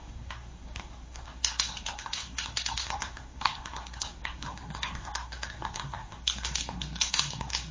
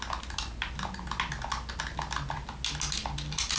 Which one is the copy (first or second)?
first